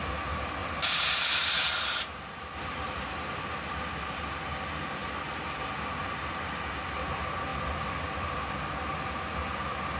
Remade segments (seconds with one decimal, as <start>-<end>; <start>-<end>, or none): 0.6-4.2; 5.0-5.7; 7.5-8.5